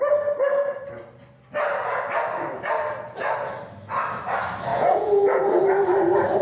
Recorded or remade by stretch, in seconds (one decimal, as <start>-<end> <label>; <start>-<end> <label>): 0.0-4.7 recorded; 4.7-5.4 remade; 5.4-6.4 recorded